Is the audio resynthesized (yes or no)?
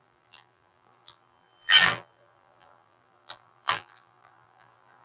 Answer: yes